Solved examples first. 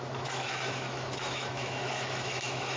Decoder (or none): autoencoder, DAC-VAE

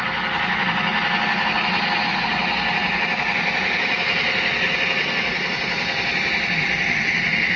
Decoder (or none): none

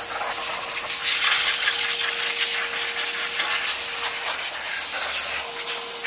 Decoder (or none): none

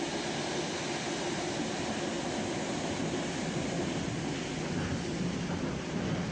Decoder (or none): none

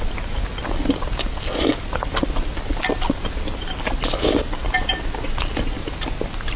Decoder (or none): none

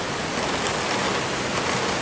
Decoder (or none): none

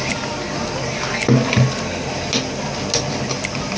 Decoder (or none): none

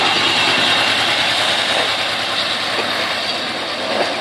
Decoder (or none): none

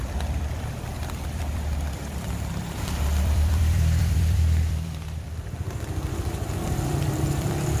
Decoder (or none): vocoder, BigVGAN v2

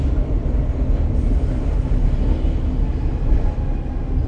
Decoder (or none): none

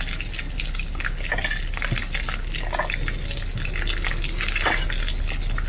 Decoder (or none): none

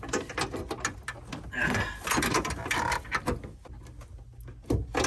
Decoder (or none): none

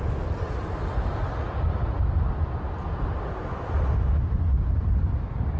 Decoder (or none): none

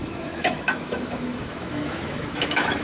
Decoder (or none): autoencoder, DAC-VAE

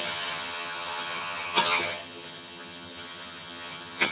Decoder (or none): vocoder, HiFi-GAN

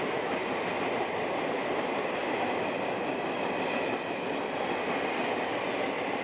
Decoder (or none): none